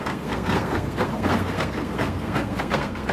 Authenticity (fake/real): fake